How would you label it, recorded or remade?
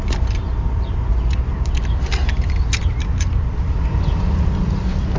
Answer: recorded